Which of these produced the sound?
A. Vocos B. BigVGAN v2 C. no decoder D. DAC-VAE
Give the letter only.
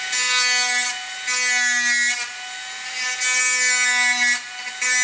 C